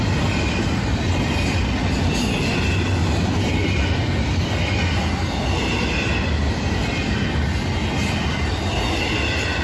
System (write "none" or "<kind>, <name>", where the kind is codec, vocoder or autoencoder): none